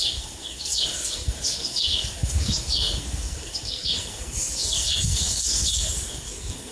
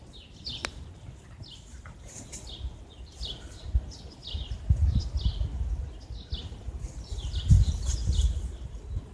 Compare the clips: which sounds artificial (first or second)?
first